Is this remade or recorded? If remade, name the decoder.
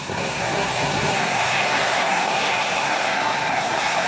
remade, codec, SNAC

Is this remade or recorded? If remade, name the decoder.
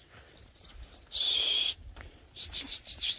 remade, vocoder, BigVGAN v2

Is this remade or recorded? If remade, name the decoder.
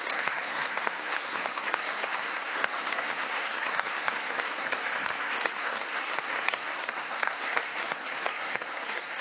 remade, codec, SNAC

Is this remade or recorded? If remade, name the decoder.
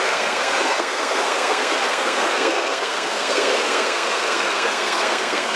remade, codec, SNAC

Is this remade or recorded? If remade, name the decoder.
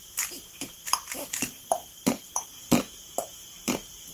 remade, vocoder, BigVGAN v2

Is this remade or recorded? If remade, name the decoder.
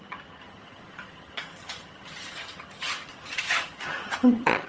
remade, vocoder, HiFi-GAN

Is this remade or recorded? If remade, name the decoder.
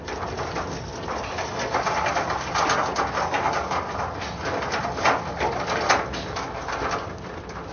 recorded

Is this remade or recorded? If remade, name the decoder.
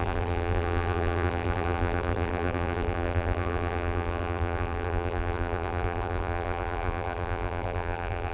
remade, vocoder, BigVGAN v2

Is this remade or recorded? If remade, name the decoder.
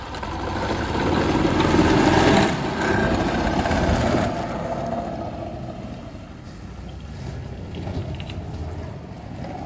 recorded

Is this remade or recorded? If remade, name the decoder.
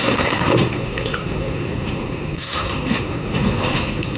remade, codec, SNAC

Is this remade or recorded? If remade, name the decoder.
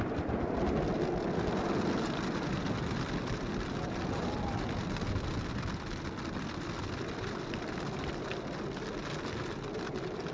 recorded